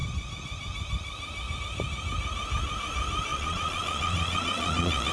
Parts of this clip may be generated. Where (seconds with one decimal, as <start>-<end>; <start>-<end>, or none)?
3.3-5.1